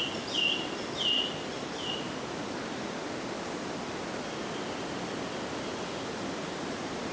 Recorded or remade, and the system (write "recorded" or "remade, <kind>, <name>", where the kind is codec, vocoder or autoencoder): recorded